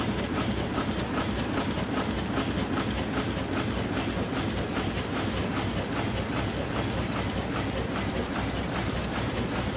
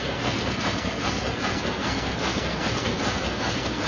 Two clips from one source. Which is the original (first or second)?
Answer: first